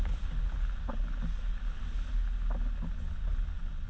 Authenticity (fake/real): real